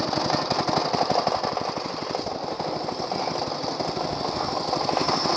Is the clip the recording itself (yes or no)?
yes